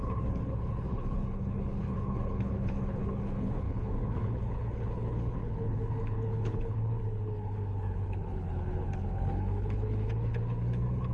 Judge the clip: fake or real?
fake